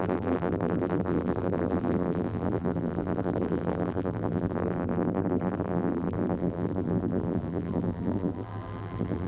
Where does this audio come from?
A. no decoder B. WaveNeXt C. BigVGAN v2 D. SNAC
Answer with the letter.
C